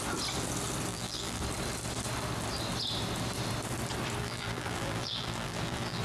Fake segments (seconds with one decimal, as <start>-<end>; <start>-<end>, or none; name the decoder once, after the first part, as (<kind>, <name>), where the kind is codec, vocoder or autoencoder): 0.9-1.4 (vocoder, BigVGAN v2); 4.2-6.0